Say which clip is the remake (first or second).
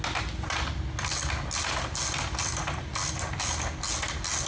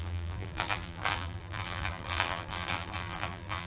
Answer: second